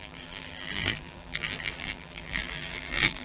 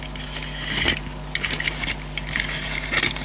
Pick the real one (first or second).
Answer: second